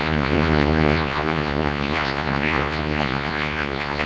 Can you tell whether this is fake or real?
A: fake